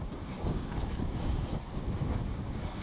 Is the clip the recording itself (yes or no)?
no